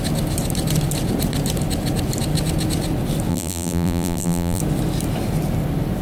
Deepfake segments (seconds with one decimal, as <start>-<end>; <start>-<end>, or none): 3.3-4.6

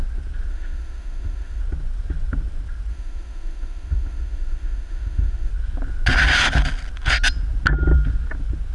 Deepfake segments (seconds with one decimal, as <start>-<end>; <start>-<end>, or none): 0.5-1.6; 2.9-5.5